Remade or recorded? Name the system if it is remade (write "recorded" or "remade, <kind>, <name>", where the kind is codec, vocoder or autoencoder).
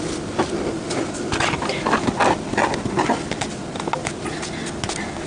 recorded